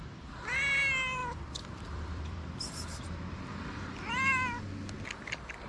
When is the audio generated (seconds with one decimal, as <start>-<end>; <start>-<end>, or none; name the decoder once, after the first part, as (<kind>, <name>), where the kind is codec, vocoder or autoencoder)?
1.2-4.6 (vocoder, BigVGAN v2)